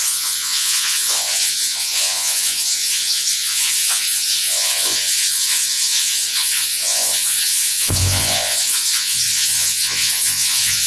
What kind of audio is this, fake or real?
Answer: fake